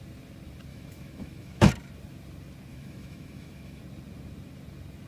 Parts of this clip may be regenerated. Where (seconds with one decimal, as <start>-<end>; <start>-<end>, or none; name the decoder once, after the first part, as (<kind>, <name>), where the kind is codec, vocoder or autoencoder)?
0.7-1.7 (autoencoder, DAC-VAE); 2.7-3.8

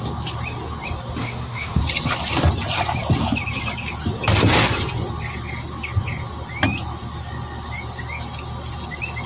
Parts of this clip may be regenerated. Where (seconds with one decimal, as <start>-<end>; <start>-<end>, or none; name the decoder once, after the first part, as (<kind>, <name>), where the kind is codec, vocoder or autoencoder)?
1.2-1.8 (autoencoder, DAC-VAE)

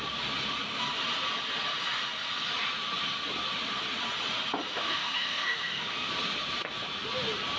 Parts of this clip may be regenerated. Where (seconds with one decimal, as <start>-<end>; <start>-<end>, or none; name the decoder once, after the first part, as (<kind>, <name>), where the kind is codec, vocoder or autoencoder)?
4.7-6.1 (autoencoder, DAC-VAE)

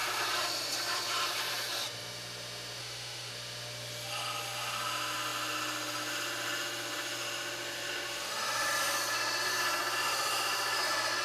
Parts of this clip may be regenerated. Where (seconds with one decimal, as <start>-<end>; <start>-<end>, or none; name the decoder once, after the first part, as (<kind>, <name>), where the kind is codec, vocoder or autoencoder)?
2.8-3.3 (autoencoder, DAC-VAE)

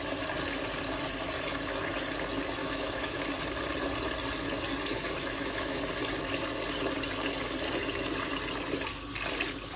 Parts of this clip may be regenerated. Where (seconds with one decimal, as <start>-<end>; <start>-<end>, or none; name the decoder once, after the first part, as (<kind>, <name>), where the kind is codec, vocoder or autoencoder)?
2.6-3.2 (autoencoder, DAC-VAE); 4.9-5.8

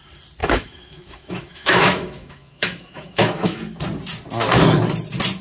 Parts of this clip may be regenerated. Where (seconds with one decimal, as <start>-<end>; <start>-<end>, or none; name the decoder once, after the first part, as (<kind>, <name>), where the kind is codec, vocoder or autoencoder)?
0.4-3.6 (autoencoder, DAC-VAE)